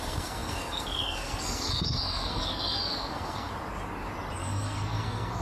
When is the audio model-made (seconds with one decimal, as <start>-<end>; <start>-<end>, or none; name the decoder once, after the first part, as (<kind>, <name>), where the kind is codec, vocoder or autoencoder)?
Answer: 0.0-3.5 (codec, SNAC); 4.4-5.4